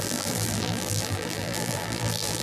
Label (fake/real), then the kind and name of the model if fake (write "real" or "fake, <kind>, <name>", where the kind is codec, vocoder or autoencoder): fake, vocoder, BigVGAN v2